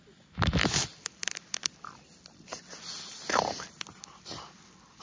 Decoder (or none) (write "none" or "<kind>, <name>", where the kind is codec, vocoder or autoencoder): none